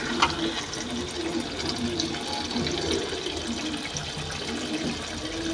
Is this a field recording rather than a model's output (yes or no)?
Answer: yes